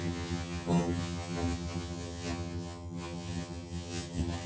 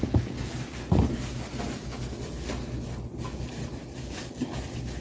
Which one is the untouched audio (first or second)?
second